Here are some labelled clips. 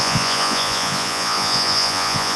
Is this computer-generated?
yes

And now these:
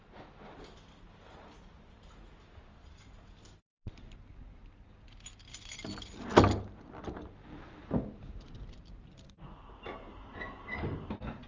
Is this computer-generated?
no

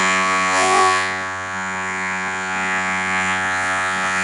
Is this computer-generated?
yes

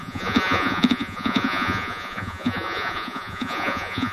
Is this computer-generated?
yes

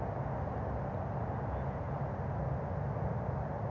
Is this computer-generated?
no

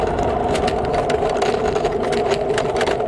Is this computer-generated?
no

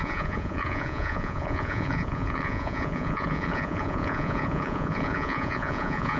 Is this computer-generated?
yes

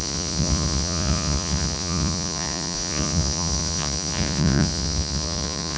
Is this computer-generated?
yes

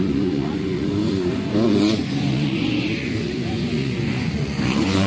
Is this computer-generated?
yes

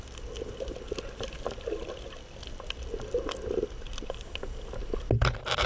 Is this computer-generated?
no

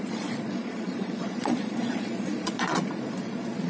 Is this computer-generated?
yes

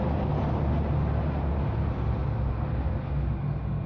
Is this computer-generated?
no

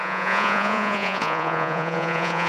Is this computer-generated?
yes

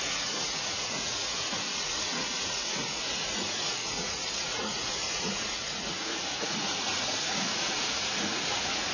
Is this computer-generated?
yes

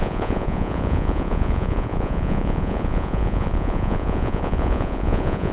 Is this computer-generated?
yes